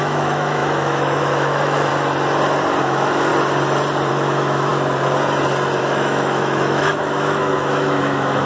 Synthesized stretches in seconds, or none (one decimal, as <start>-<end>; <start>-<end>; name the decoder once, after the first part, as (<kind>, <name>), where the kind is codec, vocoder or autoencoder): 0.0-1.9 (autoencoder, DAC-VAE); 2.8-3.3; 4.1-4.7; 5.8-8.4